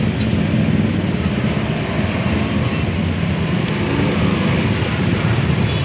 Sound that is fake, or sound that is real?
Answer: real